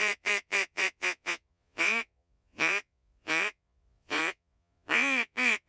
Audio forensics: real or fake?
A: fake